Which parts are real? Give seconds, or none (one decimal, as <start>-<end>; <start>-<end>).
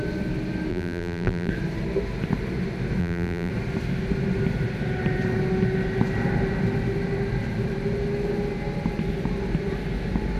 0.0-0.7; 1.5-3.0; 3.5-10.4